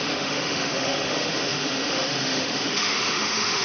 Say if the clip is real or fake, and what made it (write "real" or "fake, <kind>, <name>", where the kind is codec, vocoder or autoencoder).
fake, autoencoder, DAC-VAE